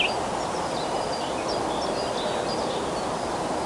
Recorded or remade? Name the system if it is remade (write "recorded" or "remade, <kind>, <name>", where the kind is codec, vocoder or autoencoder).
recorded